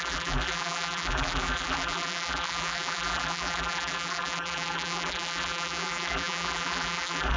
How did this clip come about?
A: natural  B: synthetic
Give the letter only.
B